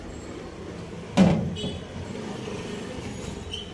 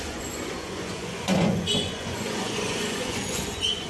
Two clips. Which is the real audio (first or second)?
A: first